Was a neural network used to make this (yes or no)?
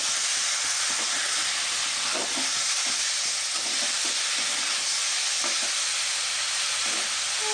no